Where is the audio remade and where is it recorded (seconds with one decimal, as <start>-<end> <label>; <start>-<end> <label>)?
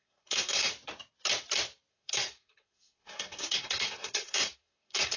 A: 0.0-0.7 remade; 0.7-1.9 recorded; 1.9-5.2 remade